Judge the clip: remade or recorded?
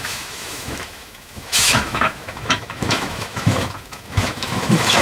remade